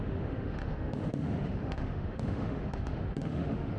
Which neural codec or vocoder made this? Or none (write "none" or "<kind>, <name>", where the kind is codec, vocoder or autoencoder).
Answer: autoencoder, DAC-VAE